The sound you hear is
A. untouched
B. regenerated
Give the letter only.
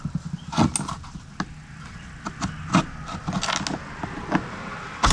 A